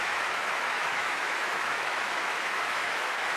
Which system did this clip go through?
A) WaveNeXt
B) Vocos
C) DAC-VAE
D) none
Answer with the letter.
C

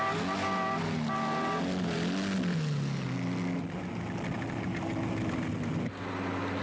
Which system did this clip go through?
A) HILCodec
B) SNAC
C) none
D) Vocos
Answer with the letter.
C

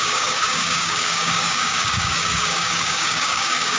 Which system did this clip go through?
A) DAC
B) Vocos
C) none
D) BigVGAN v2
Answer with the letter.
A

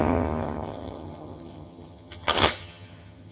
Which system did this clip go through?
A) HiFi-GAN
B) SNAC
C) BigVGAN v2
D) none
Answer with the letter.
A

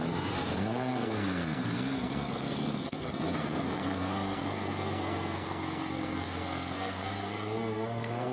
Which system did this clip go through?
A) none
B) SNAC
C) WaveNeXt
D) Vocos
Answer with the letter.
B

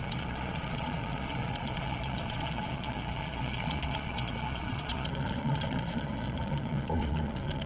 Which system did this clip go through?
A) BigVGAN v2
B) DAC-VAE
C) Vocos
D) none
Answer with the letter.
C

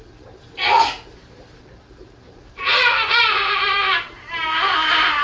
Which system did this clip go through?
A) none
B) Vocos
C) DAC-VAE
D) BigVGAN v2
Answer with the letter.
D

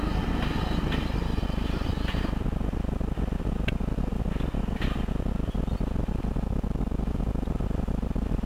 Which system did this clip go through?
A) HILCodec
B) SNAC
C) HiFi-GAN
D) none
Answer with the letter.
D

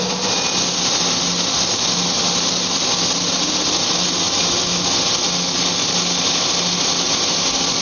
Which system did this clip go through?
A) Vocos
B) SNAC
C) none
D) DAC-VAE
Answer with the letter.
C